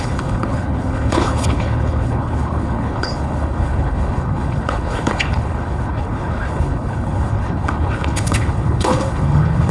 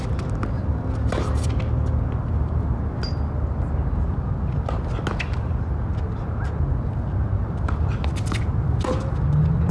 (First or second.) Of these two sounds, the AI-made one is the first